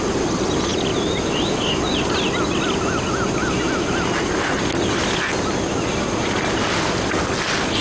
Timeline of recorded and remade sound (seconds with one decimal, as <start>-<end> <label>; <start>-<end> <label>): 0.0-7.8 recorded

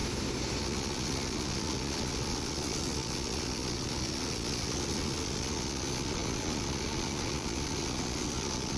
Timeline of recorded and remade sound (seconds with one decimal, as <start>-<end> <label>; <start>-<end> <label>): 0.0-0.6 recorded; 0.6-8.8 remade

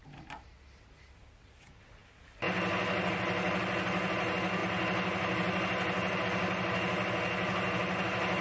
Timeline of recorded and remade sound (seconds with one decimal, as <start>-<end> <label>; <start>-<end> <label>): 0.0-8.4 recorded

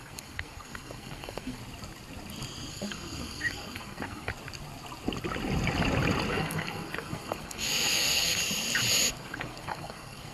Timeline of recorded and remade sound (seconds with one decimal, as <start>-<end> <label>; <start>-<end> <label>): 0.0-1.6 remade; 1.6-2.7 recorded; 2.7-4.3 remade; 4.3-6.3 recorded; 6.3-8.4 remade; 8.4-9.1 recorded; 9.1-10.3 remade

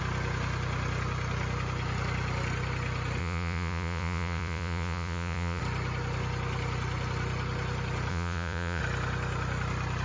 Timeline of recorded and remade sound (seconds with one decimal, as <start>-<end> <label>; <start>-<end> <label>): 0.0-3.2 recorded; 3.2-5.6 remade; 5.6-8.1 recorded; 8.1-8.8 remade; 8.8-10.0 recorded